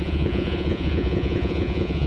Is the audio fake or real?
fake